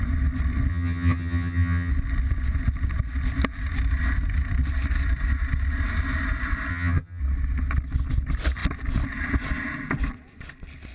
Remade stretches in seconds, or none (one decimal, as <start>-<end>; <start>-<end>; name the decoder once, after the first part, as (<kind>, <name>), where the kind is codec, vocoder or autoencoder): 0.7-1.9 (vocoder, HiFi-GAN); 6.7-7.2